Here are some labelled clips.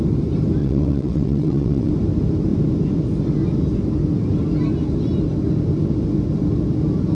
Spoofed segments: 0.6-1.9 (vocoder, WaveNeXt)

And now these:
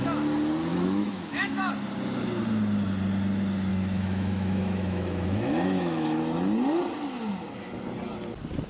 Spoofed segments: 0.7-1.7 (autoencoder, DAC-VAE); 3.7-6.2

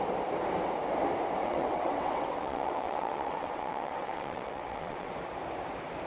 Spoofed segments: 1.4-5.1 (vocoder, WaveNeXt)

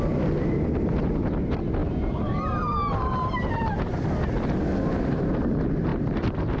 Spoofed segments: 1.8-3.5 (vocoder, BigVGAN v2); 5.9-6.6